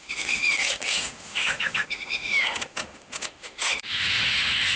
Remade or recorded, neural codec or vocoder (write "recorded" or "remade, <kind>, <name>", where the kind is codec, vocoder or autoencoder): remade, autoencoder, DAC-VAE